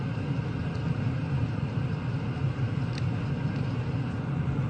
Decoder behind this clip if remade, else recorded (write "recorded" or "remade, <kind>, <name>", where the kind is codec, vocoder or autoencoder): recorded